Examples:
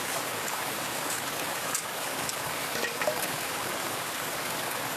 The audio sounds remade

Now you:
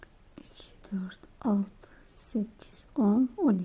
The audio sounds remade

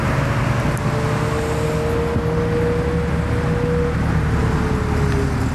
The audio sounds recorded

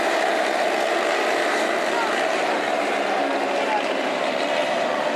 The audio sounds remade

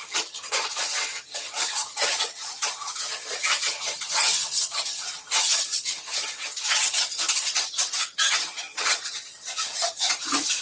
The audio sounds remade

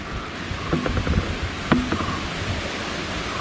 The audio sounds recorded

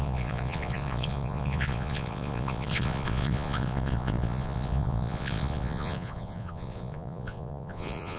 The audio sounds remade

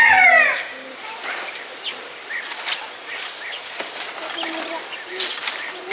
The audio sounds recorded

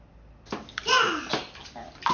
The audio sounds recorded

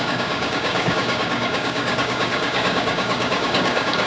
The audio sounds remade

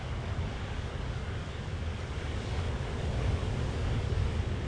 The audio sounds remade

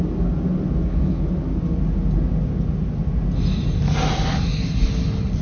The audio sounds recorded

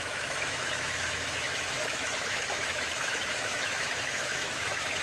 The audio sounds remade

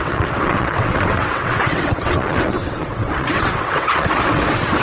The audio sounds remade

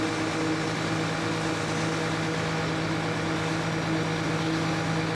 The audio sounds recorded